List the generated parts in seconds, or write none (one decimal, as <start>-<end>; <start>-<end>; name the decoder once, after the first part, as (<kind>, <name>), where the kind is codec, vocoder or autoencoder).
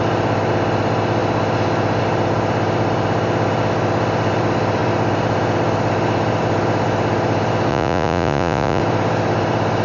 7.7-8.8 (vocoder, Vocos)